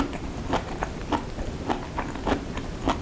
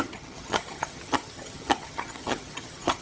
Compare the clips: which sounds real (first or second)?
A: first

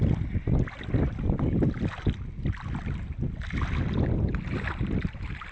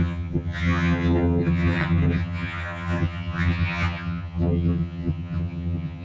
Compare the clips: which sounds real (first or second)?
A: first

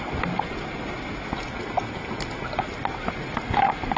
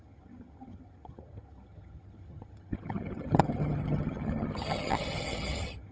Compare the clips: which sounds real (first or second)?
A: first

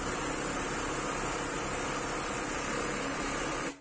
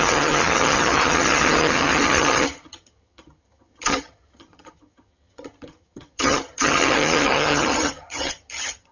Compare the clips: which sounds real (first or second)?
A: first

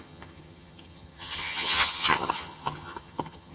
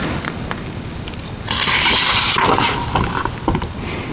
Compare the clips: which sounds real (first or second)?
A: second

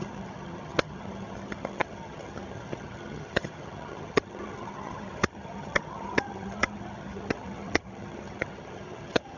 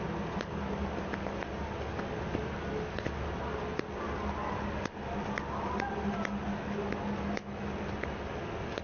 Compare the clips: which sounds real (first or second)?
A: second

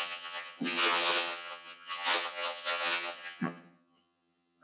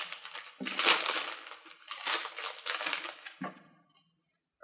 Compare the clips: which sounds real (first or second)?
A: second